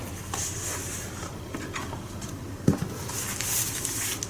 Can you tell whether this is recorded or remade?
remade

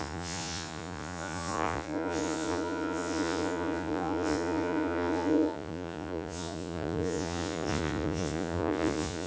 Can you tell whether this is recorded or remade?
remade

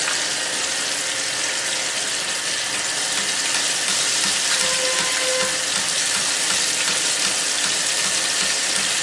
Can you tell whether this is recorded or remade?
recorded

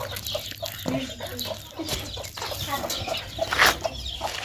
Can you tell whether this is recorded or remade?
recorded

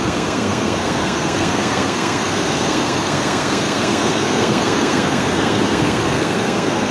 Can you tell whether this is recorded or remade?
remade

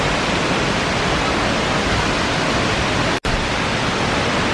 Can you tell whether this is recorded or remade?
recorded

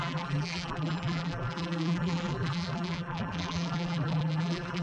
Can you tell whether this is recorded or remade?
remade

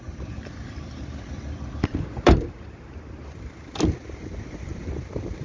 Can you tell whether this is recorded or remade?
remade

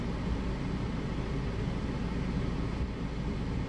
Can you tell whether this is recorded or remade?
recorded